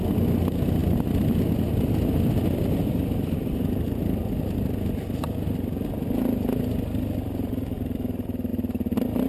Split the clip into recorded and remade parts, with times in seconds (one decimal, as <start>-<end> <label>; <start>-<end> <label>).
0.0-9.3 recorded